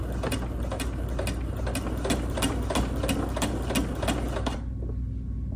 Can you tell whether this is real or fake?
real